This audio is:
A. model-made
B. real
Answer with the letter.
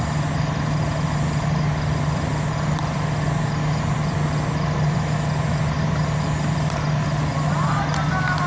B